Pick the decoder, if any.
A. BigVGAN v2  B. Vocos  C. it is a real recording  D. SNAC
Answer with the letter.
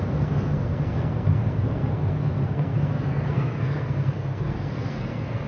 D